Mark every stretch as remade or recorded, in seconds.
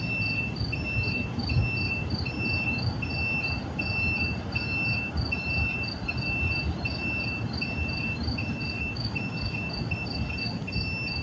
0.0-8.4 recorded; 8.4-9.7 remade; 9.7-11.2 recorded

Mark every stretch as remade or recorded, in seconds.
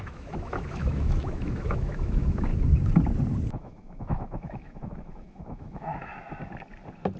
0.0-2.5 remade; 2.5-3.5 recorded; 3.5-6.1 remade; 6.1-7.2 recorded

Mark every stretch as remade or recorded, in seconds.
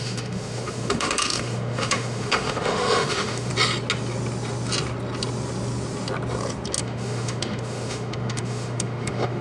0.0-3.5 remade; 3.5-6.8 recorded; 6.8-9.4 remade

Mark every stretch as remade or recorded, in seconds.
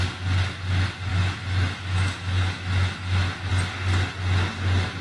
0.0-1.1 recorded; 1.1-3.5 remade; 3.5-5.0 recorded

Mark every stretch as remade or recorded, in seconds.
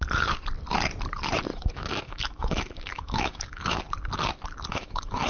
0.0-1.5 recorded; 1.5-3.8 remade; 3.8-4.7 recorded; 4.7-5.3 remade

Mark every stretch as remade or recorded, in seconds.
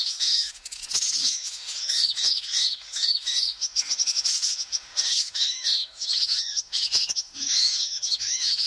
0.0-8.7 remade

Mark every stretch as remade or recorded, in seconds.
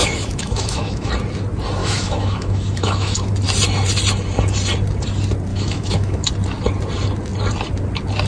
0.0-1.1 remade; 1.1-1.8 recorded; 1.8-3.3 remade; 3.3-5.5 recorded; 5.5-6.3 remade; 6.3-8.3 recorded